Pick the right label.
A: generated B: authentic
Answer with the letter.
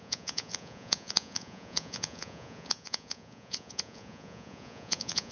A